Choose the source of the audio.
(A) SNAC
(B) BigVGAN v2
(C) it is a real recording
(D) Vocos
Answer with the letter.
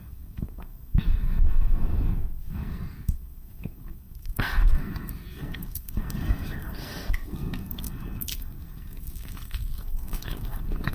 A